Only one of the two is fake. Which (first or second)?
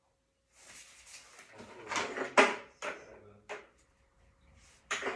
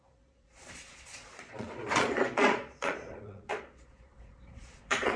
second